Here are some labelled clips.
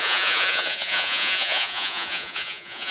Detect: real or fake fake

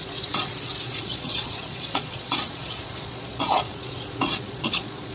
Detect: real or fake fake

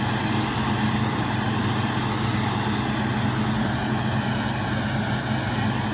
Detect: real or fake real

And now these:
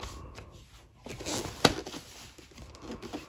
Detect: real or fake real